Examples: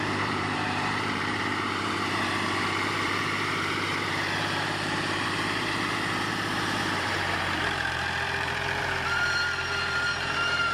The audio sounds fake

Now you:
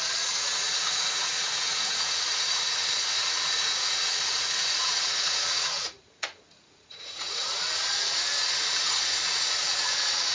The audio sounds fake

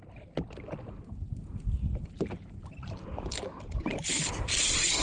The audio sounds real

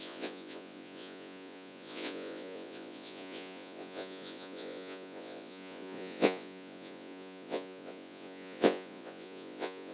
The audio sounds fake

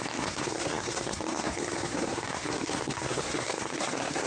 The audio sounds fake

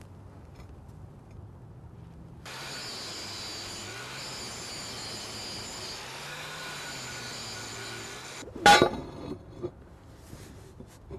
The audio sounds real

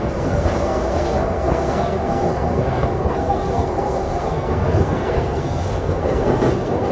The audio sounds fake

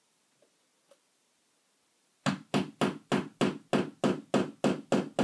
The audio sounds real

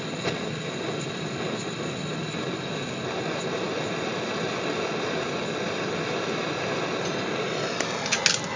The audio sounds real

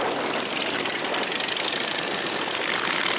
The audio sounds real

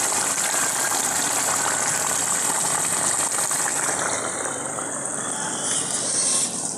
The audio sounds real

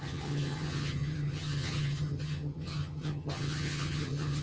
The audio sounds fake